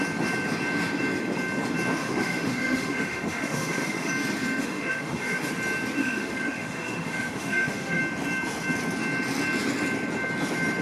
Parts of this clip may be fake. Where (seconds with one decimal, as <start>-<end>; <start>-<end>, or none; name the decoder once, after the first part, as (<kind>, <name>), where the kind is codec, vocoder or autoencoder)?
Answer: 2.0-4.1 (autoencoder, DAC-VAE); 4.6-5.5; 6.0-8.0